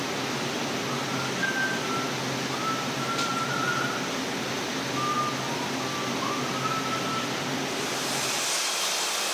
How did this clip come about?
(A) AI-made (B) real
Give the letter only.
B